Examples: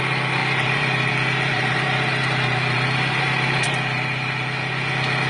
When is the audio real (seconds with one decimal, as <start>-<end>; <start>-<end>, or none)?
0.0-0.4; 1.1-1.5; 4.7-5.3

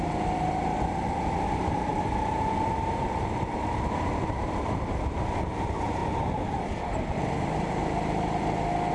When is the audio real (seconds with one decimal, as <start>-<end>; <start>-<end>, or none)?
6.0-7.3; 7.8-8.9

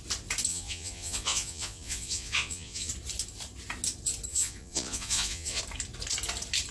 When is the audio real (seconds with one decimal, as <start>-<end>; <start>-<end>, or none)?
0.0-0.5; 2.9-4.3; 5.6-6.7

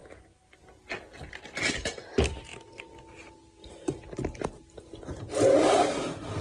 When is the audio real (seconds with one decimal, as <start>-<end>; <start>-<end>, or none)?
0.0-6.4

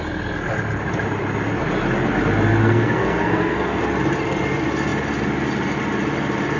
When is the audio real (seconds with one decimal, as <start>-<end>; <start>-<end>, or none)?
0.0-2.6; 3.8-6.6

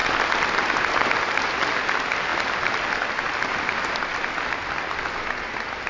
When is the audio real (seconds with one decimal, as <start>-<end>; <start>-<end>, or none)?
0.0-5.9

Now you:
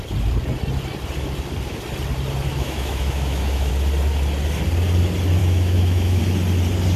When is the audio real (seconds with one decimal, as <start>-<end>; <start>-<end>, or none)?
0.0-2.5; 3.7-5.4; 6.2-7.0